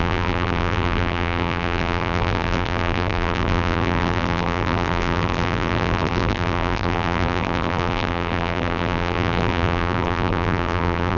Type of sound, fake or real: fake